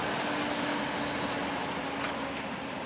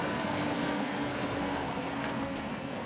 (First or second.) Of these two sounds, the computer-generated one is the second